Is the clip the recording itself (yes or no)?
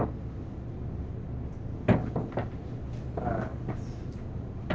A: yes